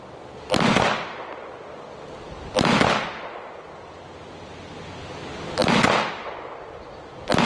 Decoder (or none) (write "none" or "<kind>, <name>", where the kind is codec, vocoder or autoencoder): none